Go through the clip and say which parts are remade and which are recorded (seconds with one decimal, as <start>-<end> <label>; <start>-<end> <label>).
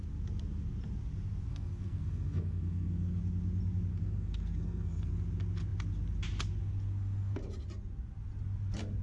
0.0-1.5 recorded; 1.5-3.2 remade; 3.2-3.9 recorded; 3.9-5.1 remade; 5.1-9.0 recorded